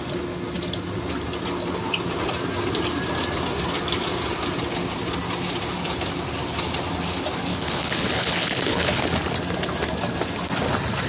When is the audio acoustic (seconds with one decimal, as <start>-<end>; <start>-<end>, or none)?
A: 0.0-7.5; 9.0-11.1

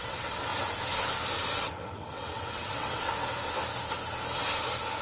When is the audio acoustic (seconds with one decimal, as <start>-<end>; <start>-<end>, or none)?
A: 0.5-1.6; 3.1-5.0

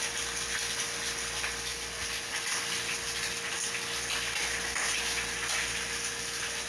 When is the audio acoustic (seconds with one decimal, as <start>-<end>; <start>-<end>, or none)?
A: 0.0-6.7